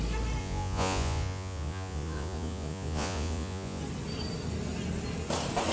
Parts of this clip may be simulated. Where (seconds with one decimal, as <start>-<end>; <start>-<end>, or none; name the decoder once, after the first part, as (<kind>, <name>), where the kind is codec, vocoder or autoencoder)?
0.4-3.8 (vocoder, Vocos)